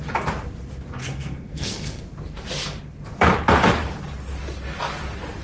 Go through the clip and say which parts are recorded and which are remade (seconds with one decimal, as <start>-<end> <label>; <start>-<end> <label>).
0.0-1.0 recorded; 1.0-2.0 remade; 2.0-5.4 recorded